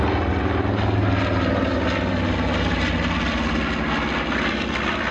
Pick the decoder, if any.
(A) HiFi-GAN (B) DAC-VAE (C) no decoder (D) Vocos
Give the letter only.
C